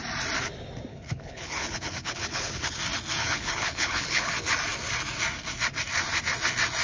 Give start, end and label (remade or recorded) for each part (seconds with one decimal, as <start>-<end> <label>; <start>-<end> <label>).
0.0-0.9 recorded; 0.9-2.8 remade; 2.8-3.2 recorded; 3.2-4.3 remade; 4.3-6.8 recorded